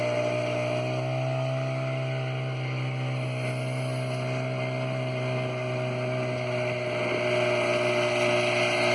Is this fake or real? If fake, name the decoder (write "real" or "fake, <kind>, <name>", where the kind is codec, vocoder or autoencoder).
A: real